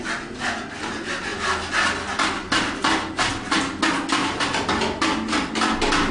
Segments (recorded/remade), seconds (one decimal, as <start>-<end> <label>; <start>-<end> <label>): 0.0-6.1 recorded